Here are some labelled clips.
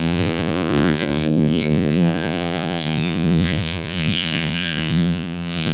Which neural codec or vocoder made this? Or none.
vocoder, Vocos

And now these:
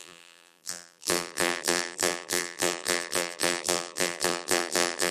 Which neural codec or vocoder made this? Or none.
vocoder, BigVGAN v2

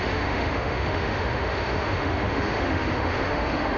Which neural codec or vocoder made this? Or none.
autoencoder, DAC-VAE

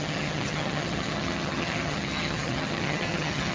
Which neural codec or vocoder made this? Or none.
vocoder, HiFi-GAN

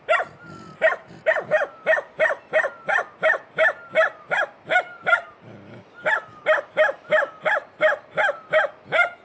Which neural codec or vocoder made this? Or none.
none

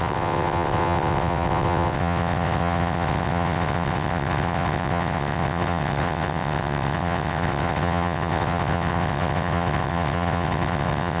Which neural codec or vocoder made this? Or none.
vocoder, WaveNeXt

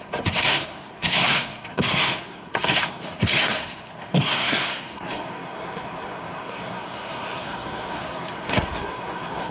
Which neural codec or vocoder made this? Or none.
codec, SNAC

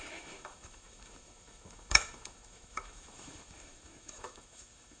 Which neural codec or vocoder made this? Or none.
autoencoder, DAC-VAE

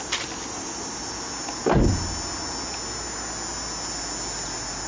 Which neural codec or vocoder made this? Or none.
none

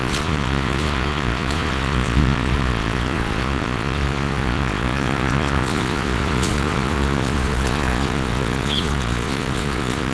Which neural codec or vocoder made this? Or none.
vocoder, Vocos